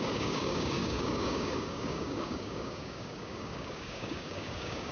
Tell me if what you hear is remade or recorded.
remade